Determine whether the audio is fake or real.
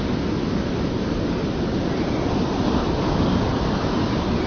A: real